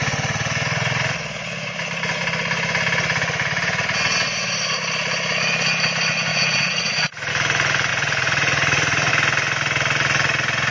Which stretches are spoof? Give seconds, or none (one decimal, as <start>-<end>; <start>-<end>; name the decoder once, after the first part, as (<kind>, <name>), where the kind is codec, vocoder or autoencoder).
6.3-7.3 (vocoder, Vocos); 7.9-9.1